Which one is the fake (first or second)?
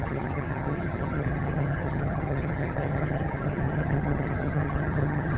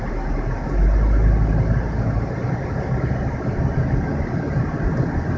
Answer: first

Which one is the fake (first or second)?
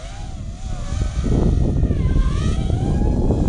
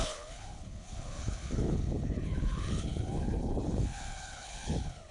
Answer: second